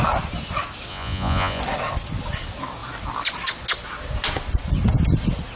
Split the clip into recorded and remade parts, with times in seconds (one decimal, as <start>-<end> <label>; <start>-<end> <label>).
0.0-0.9 recorded; 0.9-1.6 remade; 1.6-5.6 recorded